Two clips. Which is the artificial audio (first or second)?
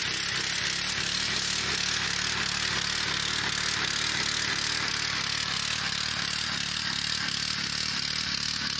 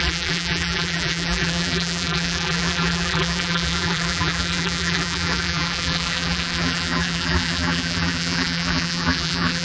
second